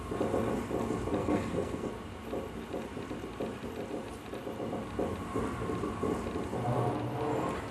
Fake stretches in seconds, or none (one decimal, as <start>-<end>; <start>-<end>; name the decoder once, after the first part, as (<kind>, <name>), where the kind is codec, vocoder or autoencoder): 1.2-1.9 (codec, SNAC)